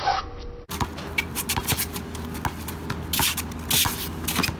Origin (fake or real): real